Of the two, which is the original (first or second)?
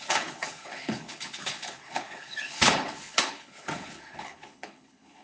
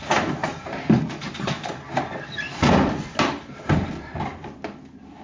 second